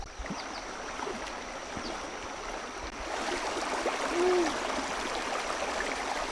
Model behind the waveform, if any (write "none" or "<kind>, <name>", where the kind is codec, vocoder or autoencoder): none